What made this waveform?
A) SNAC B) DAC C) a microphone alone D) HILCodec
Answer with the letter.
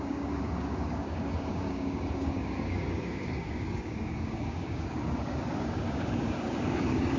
B